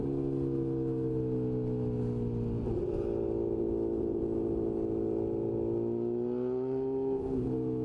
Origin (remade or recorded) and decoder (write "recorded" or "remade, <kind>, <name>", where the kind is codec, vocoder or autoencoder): recorded